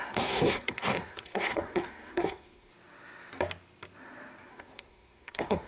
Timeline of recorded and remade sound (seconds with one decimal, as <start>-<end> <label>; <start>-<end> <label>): 0.0-2.7 remade; 2.7-4.5 recorded; 4.5-5.7 remade